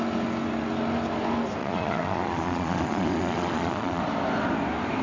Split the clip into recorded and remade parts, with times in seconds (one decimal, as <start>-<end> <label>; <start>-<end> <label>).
0.0-1.6 recorded; 1.6-4.0 remade; 4.0-5.0 recorded